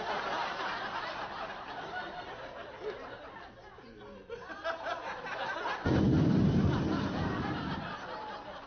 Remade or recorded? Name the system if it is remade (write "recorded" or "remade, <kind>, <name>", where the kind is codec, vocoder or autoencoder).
recorded